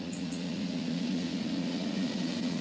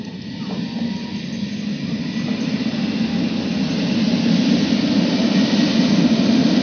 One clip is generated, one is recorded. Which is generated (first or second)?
first